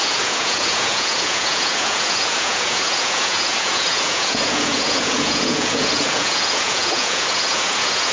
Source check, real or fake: fake